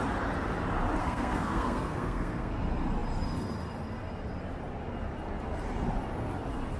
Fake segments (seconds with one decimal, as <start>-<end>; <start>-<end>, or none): 1.0-2.5